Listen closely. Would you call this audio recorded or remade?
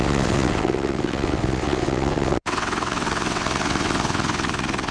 remade